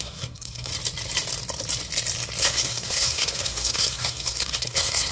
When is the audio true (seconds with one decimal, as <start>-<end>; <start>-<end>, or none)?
0.7-2.4